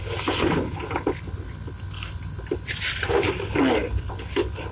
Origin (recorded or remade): recorded